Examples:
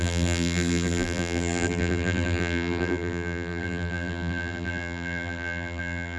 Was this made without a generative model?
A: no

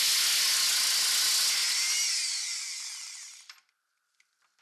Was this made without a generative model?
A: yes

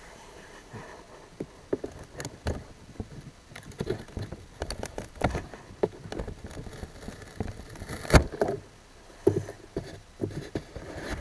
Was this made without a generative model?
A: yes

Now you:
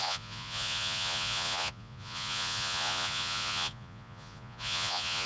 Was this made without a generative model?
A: no